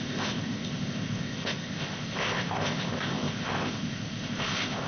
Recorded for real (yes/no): no